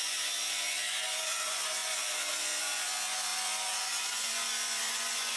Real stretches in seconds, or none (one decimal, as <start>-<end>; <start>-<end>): none